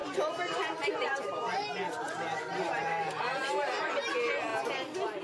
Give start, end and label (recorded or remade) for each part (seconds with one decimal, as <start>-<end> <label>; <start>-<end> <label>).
0.0-4.5 remade; 4.5-5.2 recorded